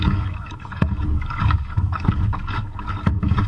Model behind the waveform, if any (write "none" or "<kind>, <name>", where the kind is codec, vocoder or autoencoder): codec, DAC